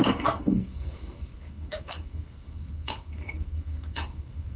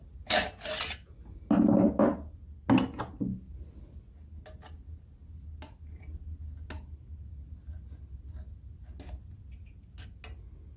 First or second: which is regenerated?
first